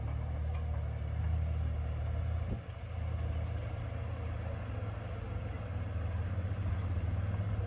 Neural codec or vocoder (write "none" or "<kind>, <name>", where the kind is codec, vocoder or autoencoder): none